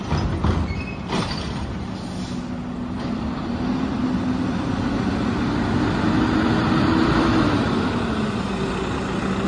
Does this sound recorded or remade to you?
recorded